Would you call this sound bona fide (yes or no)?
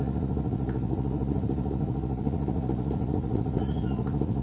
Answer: no